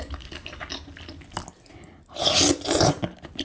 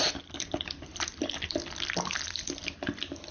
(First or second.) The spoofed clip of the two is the second